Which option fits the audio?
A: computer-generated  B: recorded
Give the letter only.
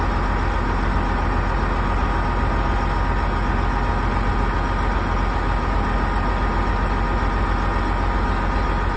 B